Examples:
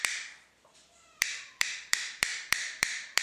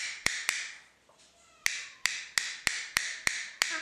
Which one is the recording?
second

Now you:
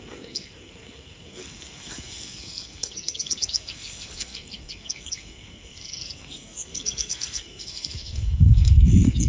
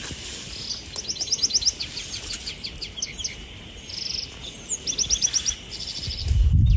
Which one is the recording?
second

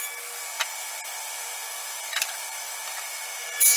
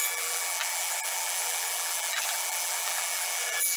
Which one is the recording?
first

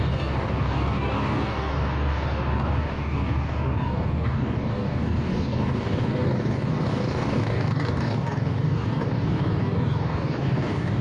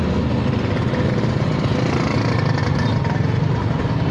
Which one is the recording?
second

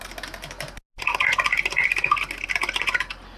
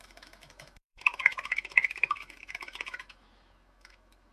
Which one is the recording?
first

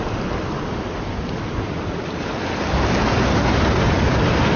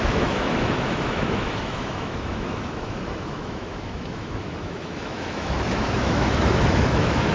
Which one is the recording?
first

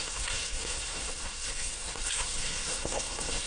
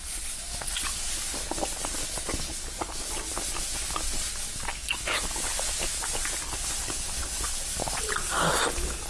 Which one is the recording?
second